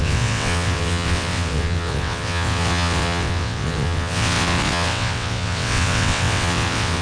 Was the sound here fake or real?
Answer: fake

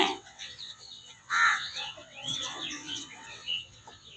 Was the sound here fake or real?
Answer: fake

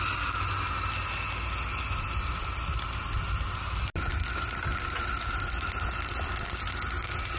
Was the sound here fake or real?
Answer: real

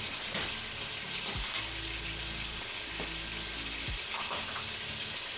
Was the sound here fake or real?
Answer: real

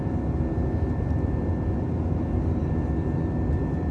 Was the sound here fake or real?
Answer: real